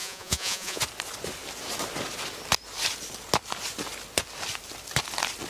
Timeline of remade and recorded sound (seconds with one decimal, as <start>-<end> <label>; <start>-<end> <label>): 0.0-0.8 remade; 0.8-5.5 recorded